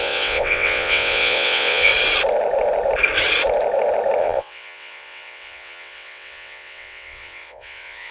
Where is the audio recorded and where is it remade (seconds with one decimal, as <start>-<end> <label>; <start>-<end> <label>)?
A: 0.0-1.9 remade; 1.9-4.2 recorded; 4.2-8.1 remade